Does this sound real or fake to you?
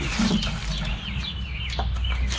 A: real